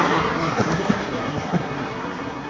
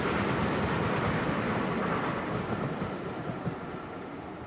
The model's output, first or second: first